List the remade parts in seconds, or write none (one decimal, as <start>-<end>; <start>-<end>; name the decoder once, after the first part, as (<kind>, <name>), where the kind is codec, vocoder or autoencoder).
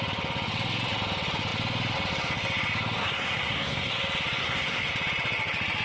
3.0-3.9 (codec, SNAC); 4.4-4.9